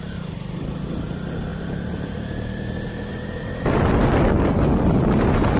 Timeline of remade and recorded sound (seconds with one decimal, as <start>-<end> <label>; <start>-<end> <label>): 0.0-1.5 recorded; 1.5-4.5 remade; 4.5-5.6 recorded